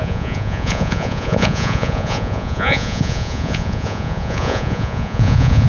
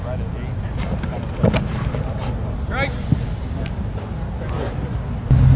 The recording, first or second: second